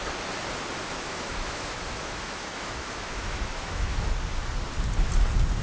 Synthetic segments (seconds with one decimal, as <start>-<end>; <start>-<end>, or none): 0.8-4.1